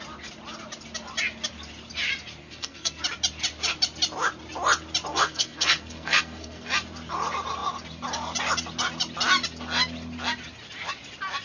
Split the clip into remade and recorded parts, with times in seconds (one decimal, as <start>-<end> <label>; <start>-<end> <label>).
0.0-2.4 recorded; 2.4-3.0 remade; 3.0-5.1 recorded; 5.1-6.7 remade; 6.7-11.4 recorded